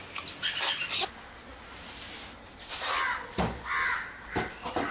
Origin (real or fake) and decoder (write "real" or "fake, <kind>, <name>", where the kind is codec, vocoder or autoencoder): real